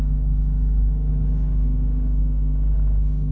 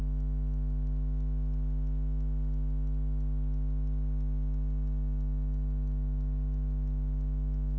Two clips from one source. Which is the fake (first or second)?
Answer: first